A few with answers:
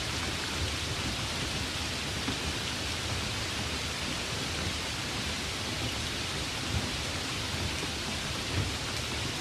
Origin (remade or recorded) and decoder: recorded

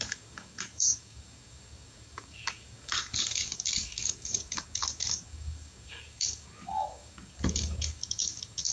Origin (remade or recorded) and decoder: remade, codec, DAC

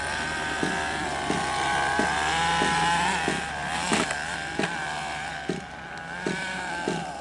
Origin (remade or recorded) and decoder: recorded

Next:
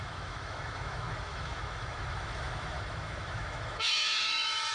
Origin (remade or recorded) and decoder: remade, autoencoder, DAC-VAE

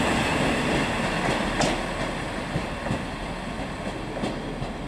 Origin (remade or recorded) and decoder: recorded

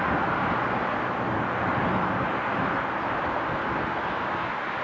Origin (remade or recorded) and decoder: recorded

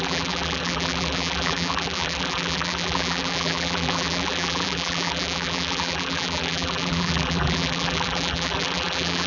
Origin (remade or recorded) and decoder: remade, vocoder, BigVGAN v2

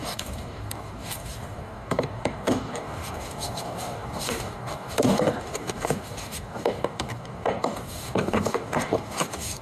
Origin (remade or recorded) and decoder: remade, codec, DAC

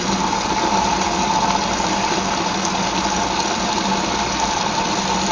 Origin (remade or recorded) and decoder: recorded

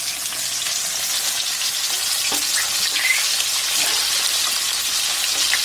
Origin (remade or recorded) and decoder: recorded